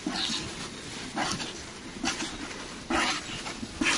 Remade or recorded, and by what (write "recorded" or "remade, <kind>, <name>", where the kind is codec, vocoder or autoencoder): recorded